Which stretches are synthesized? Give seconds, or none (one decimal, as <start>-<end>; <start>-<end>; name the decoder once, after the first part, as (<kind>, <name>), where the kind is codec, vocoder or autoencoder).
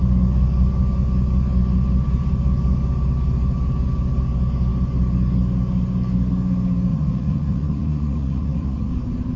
6.9-8.9 (vocoder, Vocos)